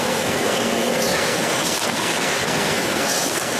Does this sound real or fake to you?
fake